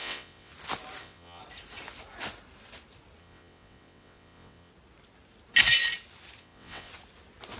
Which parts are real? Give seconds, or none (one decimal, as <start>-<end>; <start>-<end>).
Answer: 0.5-1.0; 1.4-3.2; 4.7-6.4; 6.9-7.6